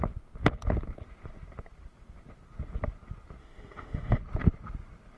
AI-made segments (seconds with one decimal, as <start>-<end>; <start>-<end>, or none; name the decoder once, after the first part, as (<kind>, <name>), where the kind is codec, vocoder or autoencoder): 3.4-4.2 (autoencoder, DAC-VAE)